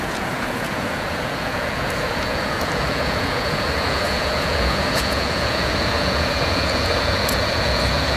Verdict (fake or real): fake